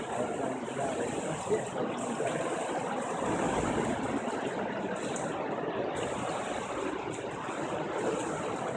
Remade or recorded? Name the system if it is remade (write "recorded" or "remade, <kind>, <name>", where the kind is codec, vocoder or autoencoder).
recorded